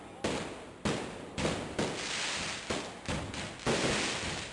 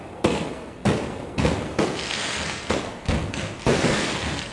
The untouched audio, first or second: first